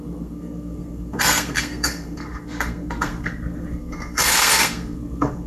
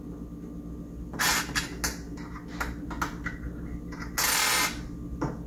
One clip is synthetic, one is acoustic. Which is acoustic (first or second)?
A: second